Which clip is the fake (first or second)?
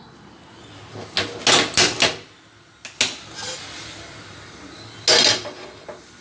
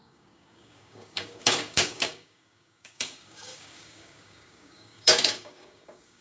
second